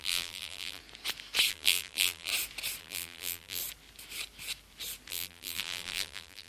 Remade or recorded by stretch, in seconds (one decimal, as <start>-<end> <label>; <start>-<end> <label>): 0.0-0.8 remade; 0.8-1.5 recorded; 1.5-2.3 remade; 2.3-2.8 recorded; 2.8-3.6 remade; 3.6-5.1 recorded; 5.1-6.5 remade